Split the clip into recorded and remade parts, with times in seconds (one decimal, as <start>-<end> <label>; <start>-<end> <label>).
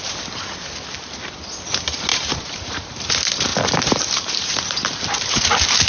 0.0-2.1 recorded; 2.1-3.1 remade; 3.1-3.5 recorded; 3.5-5.4 remade; 5.4-5.9 recorded